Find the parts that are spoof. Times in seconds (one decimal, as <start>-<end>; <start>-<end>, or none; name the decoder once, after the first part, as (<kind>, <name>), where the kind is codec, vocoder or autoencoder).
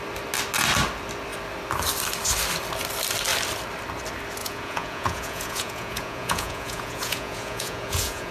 4.4-8.3 (vocoder, Vocos)